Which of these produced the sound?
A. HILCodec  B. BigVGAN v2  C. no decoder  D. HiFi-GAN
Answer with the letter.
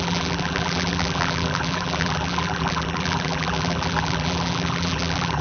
B